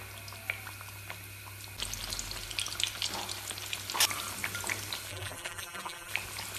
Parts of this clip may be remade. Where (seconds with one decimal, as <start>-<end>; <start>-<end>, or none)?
5.1-6.1